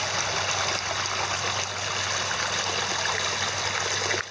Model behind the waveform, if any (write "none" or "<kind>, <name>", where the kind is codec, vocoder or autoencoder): none